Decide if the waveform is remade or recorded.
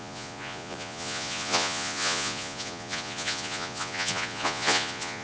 remade